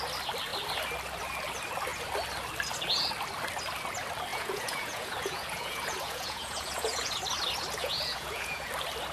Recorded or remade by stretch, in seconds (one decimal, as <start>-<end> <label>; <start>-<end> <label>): 0.0-4.3 recorded; 4.3-7.1 remade; 7.1-7.8 recorded; 7.8-8.7 remade; 8.7-9.1 recorded